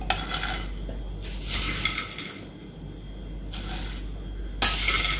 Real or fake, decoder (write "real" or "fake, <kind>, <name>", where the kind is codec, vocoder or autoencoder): real